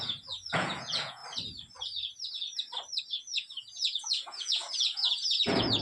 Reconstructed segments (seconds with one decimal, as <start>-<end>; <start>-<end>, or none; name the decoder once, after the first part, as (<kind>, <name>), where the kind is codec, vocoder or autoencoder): 0.0-1.2 (vocoder, Vocos); 3.1-5.8